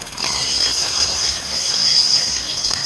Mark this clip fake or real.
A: fake